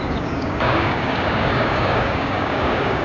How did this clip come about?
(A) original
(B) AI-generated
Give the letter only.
B